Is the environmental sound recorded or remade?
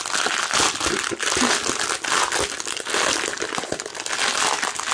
recorded